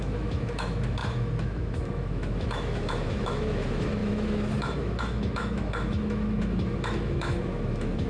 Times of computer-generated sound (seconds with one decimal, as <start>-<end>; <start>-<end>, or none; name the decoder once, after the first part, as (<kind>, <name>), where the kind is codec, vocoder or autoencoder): 0.0-8.1 (autoencoder, DAC-VAE)